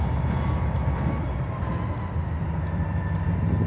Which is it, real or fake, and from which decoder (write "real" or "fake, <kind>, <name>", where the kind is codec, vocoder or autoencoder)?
real